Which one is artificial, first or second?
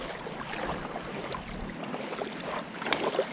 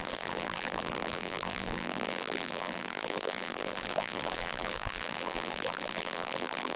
second